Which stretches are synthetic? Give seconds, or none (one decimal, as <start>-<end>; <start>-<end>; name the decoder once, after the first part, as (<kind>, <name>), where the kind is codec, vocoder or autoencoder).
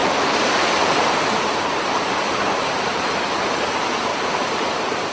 0.0-3.1 (vocoder, BigVGAN v2); 4.1-5.1